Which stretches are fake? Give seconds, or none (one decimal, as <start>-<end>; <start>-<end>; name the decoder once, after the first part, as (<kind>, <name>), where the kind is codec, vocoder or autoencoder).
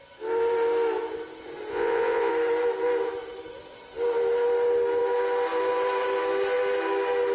1.7-2.3 (vocoder, Vocos)